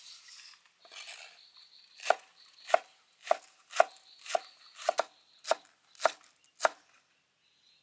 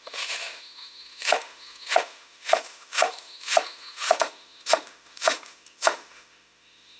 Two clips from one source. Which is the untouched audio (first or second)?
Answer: first